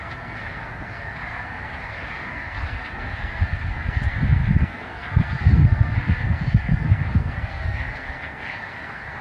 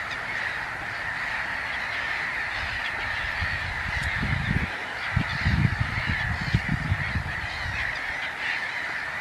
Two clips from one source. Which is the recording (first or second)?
second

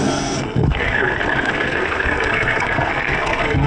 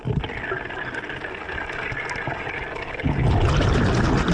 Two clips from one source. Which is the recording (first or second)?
second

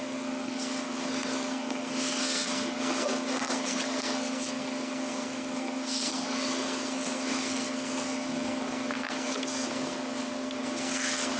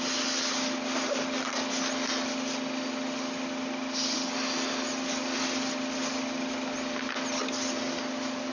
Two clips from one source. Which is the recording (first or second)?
second